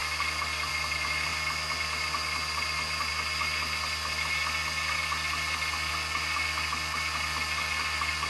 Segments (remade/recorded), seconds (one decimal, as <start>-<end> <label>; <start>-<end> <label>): 0.0-8.3 recorded